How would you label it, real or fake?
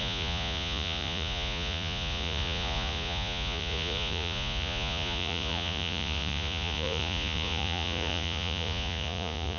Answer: fake